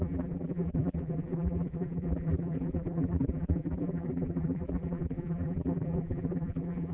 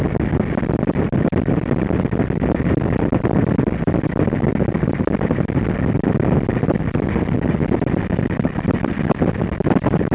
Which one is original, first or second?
second